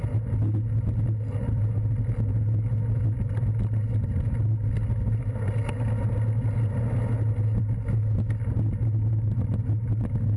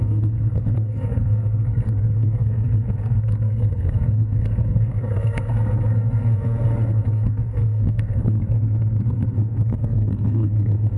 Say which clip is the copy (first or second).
second